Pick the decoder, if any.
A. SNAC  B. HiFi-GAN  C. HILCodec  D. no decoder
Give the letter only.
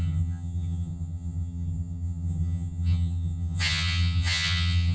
B